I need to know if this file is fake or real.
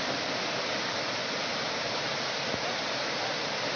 real